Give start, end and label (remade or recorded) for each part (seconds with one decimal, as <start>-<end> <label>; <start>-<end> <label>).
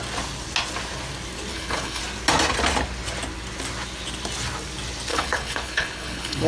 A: 0.0-1.5 recorded; 1.5-2.0 remade; 2.0-5.1 recorded; 5.1-6.5 remade